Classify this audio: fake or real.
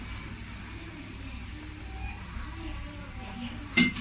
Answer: fake